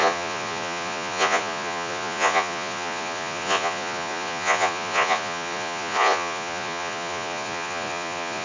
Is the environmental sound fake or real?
fake